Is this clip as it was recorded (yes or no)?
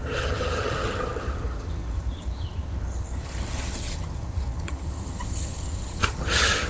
no